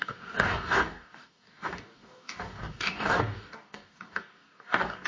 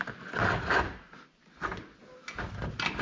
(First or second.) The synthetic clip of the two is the first